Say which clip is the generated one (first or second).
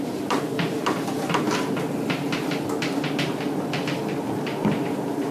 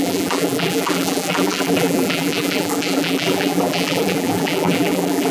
second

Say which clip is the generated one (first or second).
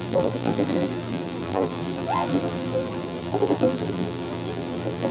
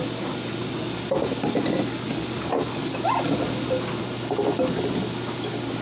first